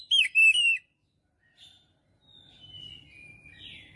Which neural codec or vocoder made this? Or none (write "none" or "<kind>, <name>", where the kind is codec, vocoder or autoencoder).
none